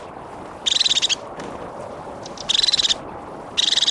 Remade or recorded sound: recorded